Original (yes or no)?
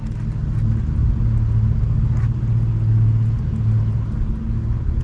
yes